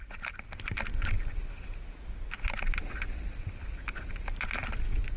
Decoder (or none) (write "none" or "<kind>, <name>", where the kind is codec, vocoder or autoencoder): none